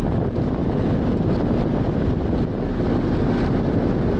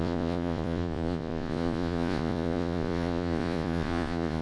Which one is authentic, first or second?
first